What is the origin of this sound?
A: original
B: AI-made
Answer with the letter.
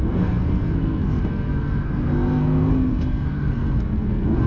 B